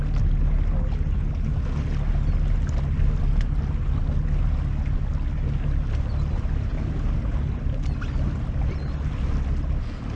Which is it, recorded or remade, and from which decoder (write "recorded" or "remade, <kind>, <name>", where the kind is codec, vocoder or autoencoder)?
recorded